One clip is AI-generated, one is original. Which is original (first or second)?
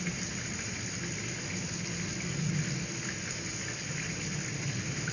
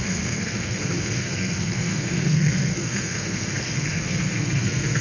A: first